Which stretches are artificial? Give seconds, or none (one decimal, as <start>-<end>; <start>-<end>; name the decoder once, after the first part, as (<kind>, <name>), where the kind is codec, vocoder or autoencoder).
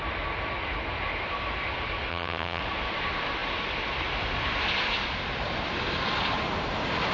2.1-2.6 (vocoder, HiFi-GAN)